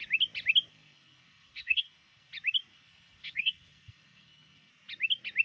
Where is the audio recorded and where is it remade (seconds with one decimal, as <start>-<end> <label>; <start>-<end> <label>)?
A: 0.0-0.7 recorded; 0.7-2.3 remade; 2.3-2.7 recorded; 2.7-4.7 remade; 4.7-5.4 recorded